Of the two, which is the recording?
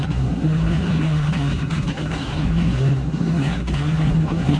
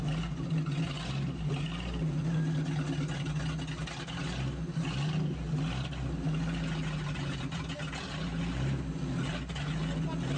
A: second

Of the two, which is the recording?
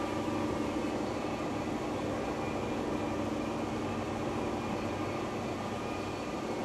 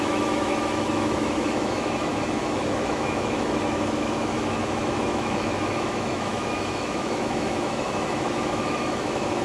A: first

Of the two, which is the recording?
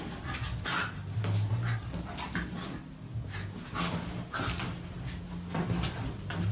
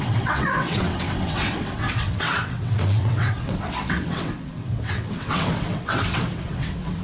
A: first